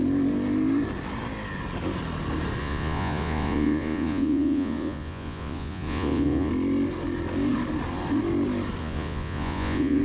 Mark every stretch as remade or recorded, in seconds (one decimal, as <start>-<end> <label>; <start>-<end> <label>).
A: 0.0-2.6 recorded; 2.6-6.5 remade; 6.5-8.8 recorded; 8.8-10.0 remade